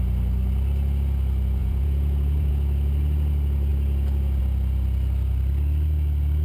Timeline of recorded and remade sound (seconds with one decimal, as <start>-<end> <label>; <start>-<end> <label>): 0.0-1.6 recorded; 1.6-2.5 remade; 2.5-6.4 recorded